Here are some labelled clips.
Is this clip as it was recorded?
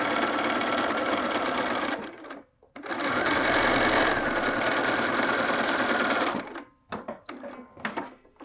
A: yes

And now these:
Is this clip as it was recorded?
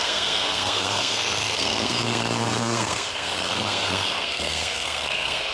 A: no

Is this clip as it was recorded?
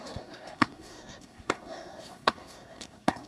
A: no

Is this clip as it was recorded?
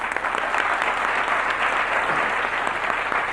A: yes